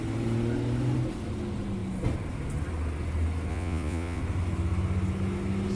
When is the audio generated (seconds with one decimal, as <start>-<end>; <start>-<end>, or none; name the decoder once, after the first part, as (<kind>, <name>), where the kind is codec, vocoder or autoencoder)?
3.5-4.2 (vocoder, Vocos)